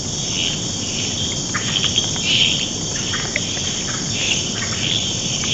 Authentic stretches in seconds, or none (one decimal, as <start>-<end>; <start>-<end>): 0.0-5.5